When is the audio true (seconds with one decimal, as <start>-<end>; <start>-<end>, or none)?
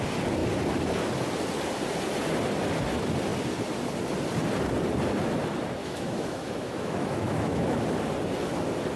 0.0-5.8; 7.8-9.0